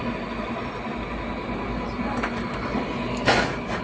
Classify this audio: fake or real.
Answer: real